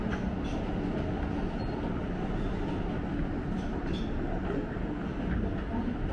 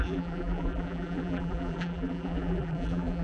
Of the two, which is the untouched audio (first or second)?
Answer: first